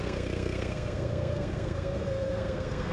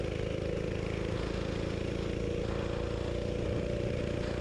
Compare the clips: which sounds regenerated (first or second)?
first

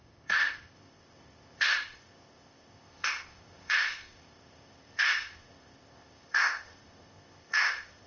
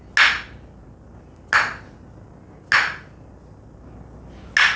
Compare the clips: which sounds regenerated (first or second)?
first